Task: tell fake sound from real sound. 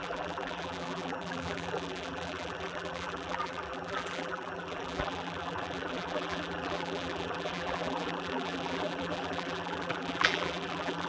fake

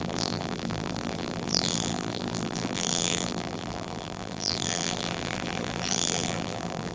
fake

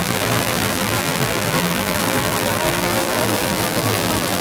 fake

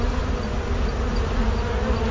real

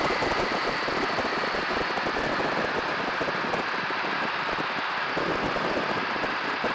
real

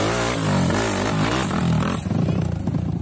real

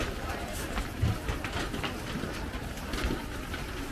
real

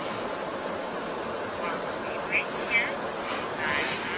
real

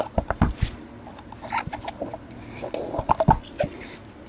fake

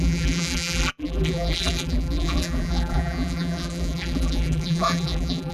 fake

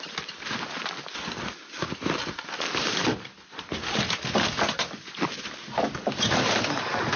fake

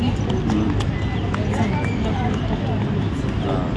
real